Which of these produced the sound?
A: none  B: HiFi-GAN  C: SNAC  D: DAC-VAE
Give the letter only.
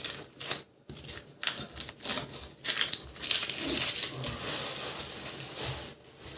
A